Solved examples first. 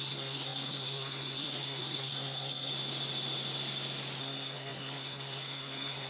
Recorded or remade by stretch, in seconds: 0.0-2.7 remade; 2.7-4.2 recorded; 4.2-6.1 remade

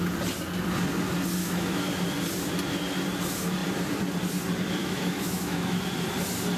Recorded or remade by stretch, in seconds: 0.0-1.4 recorded; 1.4-1.9 remade; 1.9-4.8 recorded; 4.8-5.8 remade; 5.8-6.6 recorded

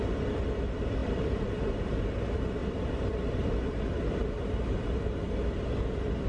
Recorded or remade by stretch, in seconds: 0.0-1.0 recorded; 1.0-1.6 remade; 1.6-2.6 recorded; 2.6-3.8 remade; 3.8-6.3 recorded

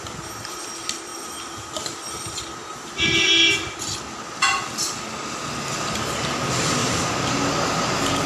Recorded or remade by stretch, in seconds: 0.0-6.8 recorded; 6.8-7.3 remade; 7.3-8.3 recorded